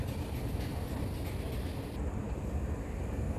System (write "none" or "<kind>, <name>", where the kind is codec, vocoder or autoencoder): none